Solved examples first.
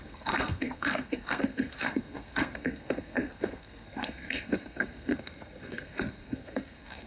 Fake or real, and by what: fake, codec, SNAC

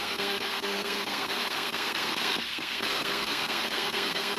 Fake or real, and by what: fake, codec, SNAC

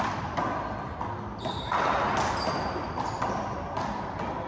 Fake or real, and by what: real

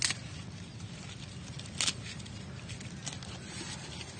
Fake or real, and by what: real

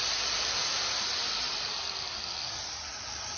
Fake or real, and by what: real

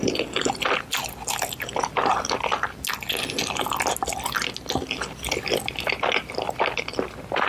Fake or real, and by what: real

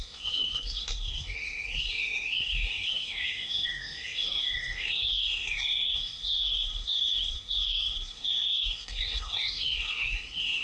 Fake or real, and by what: fake, codec, SNAC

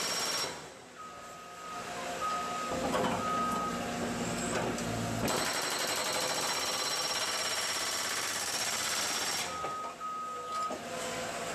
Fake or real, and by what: real